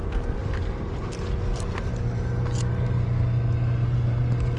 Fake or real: real